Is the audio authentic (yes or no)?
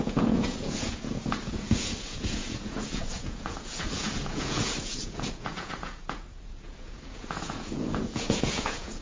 no